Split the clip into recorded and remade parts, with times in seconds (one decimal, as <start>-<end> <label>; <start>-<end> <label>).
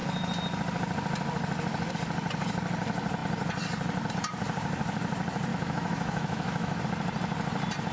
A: 0.0-5.5 recorded; 5.5-6.8 remade; 6.8-7.9 recorded